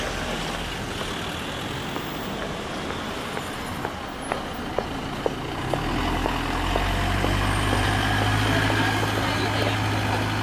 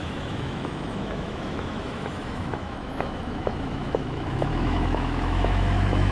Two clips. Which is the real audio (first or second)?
first